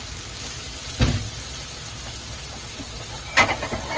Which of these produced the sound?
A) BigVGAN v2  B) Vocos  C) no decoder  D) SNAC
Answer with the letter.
C